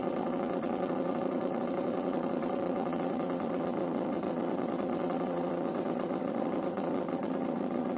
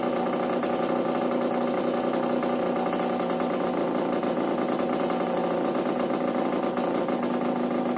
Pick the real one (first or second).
second